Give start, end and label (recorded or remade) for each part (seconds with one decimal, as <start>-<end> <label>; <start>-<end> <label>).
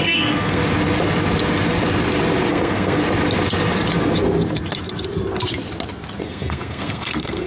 0.0-0.6 remade; 0.6-2.5 recorded; 2.5-3.0 remade; 3.0-6.2 recorded; 6.2-7.5 remade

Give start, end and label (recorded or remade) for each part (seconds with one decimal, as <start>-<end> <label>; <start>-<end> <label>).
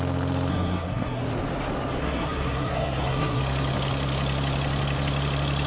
0.0-0.5 recorded; 0.5-1.2 remade; 1.2-2.0 recorded; 2.0-3.4 remade; 3.4-5.7 recorded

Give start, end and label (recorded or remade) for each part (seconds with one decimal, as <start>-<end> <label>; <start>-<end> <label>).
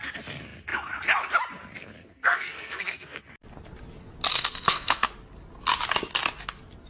0.0-2.0 recorded; 2.0-3.2 remade; 3.2-4.3 recorded; 4.3-5.1 remade; 5.1-6.9 recorded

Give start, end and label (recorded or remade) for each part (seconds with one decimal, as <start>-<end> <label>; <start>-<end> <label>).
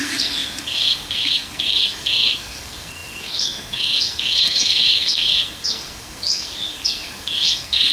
0.0-7.9 remade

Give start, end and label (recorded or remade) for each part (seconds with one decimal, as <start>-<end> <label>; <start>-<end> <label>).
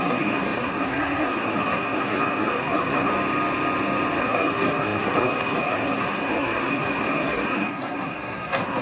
0.0-3.1 remade; 3.1-4.2 recorded; 4.2-8.8 remade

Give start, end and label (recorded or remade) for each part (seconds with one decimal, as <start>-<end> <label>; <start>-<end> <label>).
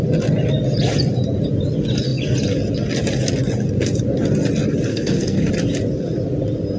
0.0-4.9 recorded; 4.9-5.5 remade; 5.5-6.8 recorded